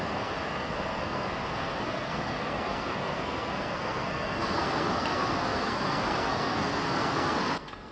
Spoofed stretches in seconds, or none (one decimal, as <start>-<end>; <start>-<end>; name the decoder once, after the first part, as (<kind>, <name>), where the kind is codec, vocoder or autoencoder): 0.0-7.9 (codec, SNAC)